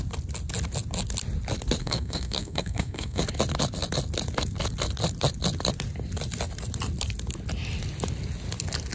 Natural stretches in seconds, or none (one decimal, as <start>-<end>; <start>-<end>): 0.0-1.8; 3.2-8.9